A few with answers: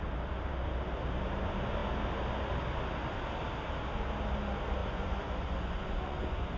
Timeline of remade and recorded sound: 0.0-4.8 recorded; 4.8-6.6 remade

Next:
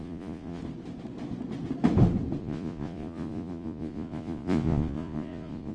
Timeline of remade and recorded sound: 0.0-0.6 remade; 0.6-2.4 recorded; 2.4-5.7 remade

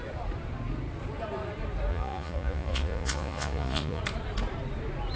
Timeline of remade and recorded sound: 0.0-1.9 recorded; 1.9-4.0 remade; 4.0-5.2 recorded

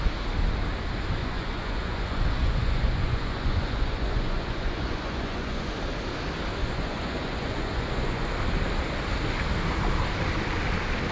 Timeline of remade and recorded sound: 0.0-1.2 recorded; 1.2-5.7 remade; 5.7-6.6 recorded; 6.6-8.3 remade; 8.3-11.1 recorded

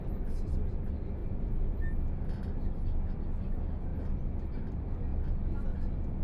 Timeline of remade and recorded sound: 0.0-1.2 recorded; 1.2-1.8 remade; 1.8-6.2 recorded

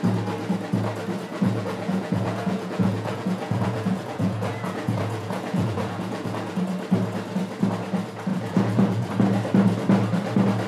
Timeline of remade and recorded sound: 0.0-1.3 recorded; 1.3-6.5 remade; 6.5-8.3 recorded; 8.3-9.1 remade; 9.1-10.7 recorded

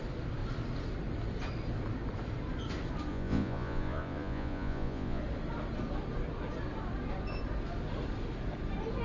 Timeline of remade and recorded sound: 0.0-3.1 recorded; 3.1-5.2 remade; 5.2-9.0 recorded

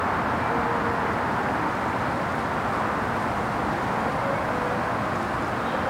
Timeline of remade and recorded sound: 0.0-5.9 recorded